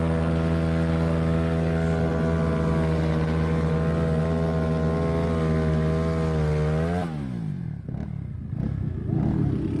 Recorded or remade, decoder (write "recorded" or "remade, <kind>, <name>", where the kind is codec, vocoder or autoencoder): recorded